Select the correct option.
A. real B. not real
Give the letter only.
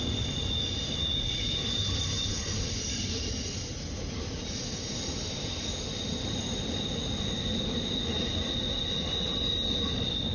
A